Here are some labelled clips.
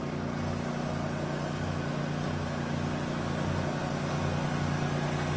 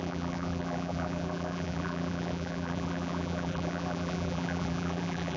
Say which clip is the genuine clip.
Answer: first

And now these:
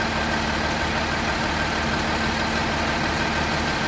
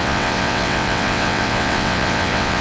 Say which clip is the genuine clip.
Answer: first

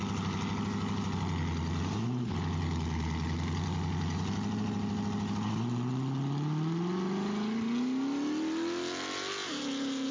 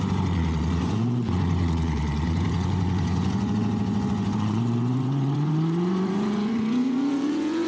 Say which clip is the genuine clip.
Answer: first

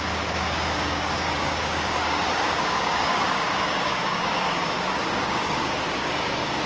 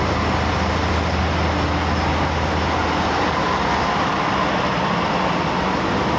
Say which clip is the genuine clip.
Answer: second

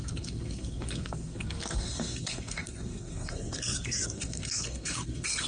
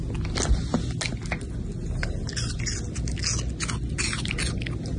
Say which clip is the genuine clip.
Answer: second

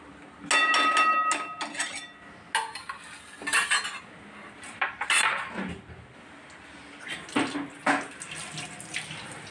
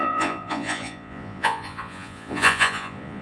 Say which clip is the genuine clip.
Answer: first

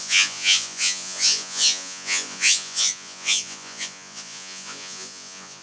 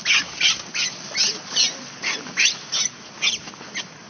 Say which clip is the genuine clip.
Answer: second